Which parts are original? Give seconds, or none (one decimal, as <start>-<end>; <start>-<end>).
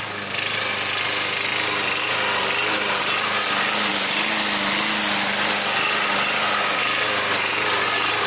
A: 0.0-8.3